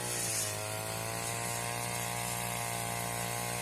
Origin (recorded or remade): recorded